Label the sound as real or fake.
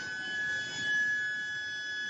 real